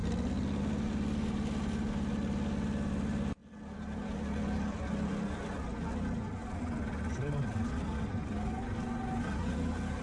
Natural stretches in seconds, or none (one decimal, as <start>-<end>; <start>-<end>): 0.0-10.0